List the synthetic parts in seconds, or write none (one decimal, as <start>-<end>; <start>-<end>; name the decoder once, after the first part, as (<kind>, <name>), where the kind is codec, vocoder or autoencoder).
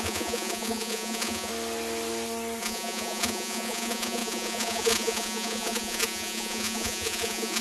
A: 0.0-1.5 (vocoder, Vocos); 2.6-7.6